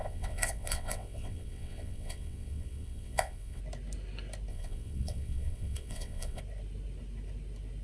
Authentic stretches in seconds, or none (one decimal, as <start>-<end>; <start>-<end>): 3.6-4.5; 6.4-7.8